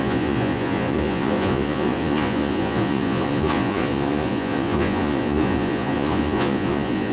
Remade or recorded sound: remade